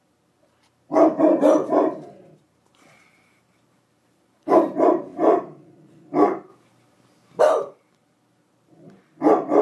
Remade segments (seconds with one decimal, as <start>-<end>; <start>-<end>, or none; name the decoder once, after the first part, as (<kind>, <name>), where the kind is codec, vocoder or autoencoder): 0.0-6.5 (vocoder, BigVGAN v2); 7.4-9.6